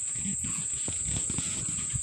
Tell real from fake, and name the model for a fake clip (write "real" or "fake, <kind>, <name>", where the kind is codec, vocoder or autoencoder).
fake, vocoder, Vocos